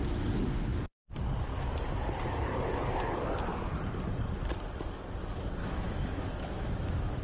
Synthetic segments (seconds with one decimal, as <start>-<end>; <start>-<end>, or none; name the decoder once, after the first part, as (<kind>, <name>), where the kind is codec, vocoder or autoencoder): 5.6-7.2 (autoencoder, DAC-VAE)

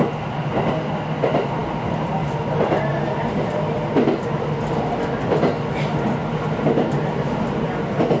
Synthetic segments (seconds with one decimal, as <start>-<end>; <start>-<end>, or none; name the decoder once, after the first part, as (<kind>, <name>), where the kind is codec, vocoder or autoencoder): none

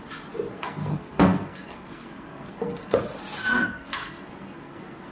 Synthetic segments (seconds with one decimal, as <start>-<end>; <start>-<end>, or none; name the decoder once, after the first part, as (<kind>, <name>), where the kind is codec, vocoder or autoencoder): 0.5-3.0 (codec, SNAC); 3.5-5.1

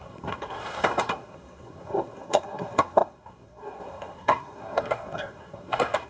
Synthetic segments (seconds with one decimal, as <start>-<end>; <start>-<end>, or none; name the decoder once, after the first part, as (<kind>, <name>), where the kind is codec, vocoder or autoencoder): 0.0-6.1 (codec, SNAC)

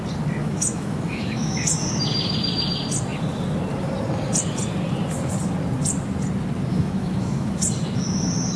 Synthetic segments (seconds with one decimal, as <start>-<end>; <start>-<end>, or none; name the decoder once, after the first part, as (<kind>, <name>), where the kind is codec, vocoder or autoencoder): 0.4-1.6 (autoencoder, DAC-VAE); 6.7-7.6